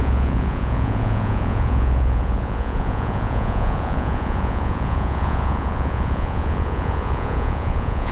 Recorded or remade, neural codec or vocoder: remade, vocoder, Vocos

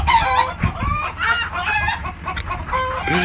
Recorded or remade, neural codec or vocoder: recorded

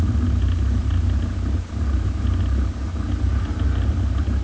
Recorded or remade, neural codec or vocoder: recorded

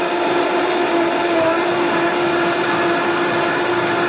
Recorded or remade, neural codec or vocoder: recorded